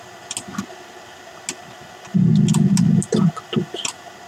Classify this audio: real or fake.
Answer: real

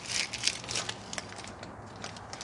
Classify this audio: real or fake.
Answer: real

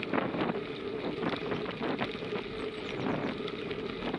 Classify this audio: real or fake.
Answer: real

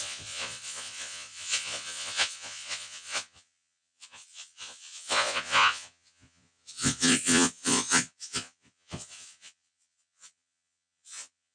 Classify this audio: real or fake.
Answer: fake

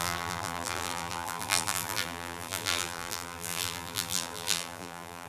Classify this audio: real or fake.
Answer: fake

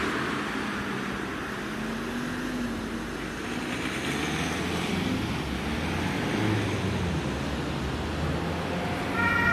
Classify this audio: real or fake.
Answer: real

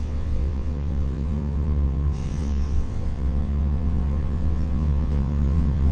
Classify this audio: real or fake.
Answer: fake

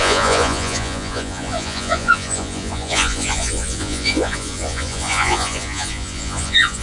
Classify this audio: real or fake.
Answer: fake